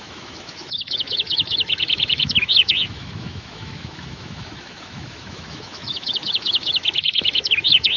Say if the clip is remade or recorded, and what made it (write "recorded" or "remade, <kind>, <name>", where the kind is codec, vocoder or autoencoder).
remade, autoencoder, DAC-VAE